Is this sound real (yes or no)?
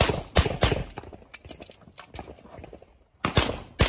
yes